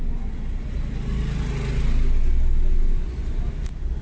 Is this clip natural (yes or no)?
yes